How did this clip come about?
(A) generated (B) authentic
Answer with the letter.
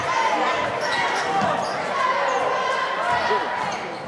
B